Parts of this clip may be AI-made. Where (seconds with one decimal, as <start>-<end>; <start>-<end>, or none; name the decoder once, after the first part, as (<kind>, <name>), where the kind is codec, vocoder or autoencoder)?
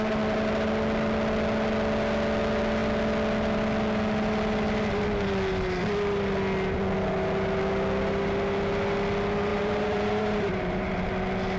9.5-11.1 (vocoder, BigVGAN v2)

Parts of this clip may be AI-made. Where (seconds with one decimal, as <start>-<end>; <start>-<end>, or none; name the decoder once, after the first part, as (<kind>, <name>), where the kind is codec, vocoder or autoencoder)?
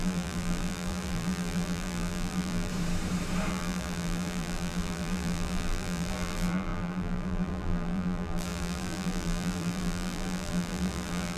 0.0-2.7 (vocoder, BigVGAN v2); 3.5-11.4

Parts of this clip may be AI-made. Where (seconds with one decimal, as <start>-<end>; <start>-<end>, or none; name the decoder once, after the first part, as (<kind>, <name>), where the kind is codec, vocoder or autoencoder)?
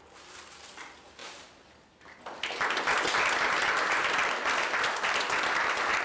none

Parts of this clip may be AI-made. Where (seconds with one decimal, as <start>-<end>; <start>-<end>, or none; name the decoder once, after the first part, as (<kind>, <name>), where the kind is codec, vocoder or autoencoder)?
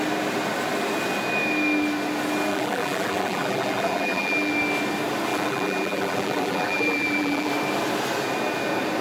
2.5-4.5 (vocoder, BigVGAN v2); 5.3-7.5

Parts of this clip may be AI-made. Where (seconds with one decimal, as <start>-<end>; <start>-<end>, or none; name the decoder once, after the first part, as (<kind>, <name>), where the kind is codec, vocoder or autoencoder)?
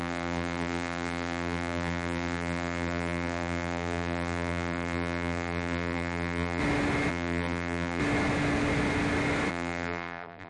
0.0-6.6 (vocoder, BigVGAN v2); 7.1-8.0; 9.5-10.5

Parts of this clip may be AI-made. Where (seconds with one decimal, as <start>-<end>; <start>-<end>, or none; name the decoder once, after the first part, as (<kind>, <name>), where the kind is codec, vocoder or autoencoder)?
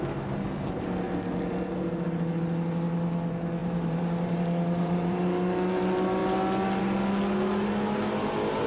3.6-5.2 (vocoder, BigVGAN v2)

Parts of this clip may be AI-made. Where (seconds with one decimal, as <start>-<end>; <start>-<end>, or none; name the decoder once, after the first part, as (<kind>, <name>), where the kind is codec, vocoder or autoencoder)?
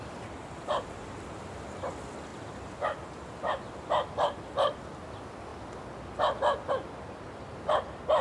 0.0-2.3 (vocoder, BigVGAN v2); 3.4-5.5; 6.7-8.2